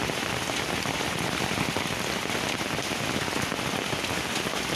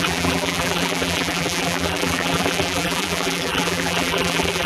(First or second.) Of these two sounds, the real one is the first